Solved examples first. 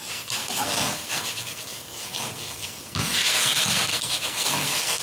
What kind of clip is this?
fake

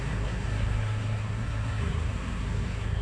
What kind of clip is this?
fake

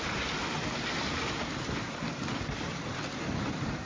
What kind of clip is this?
real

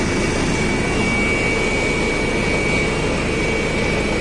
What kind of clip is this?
real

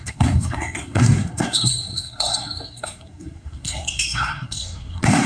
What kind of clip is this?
fake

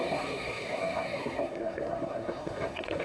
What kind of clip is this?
fake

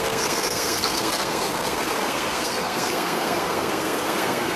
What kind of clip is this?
fake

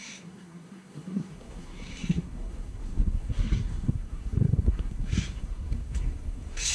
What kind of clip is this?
fake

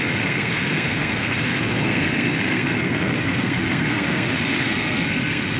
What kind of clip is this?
fake